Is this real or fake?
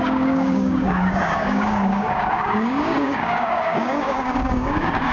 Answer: fake